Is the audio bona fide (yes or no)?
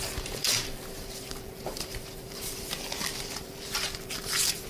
no